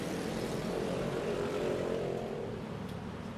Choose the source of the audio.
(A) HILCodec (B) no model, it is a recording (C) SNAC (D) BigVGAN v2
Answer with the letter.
D